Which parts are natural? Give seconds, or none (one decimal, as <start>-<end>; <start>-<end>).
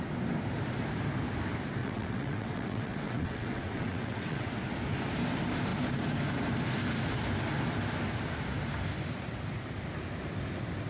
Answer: 0.0-1.8; 4.5-10.9